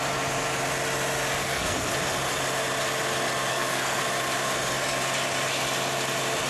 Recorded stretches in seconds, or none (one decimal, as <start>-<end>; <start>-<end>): 0.0-1.4; 1.9-3.5; 4.0-6.5